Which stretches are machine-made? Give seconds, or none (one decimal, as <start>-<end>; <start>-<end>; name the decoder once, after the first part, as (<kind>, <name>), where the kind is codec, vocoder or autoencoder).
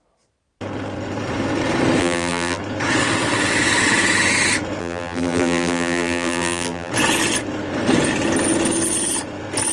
2.0-2.6 (vocoder, BigVGAN v2); 4.8-6.9